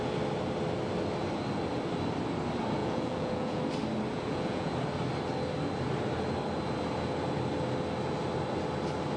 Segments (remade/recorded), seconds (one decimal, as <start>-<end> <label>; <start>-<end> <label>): 0.0-2.8 recorded; 2.8-3.6 remade; 3.6-4.1 recorded; 4.1-4.7 remade; 4.7-9.2 recorded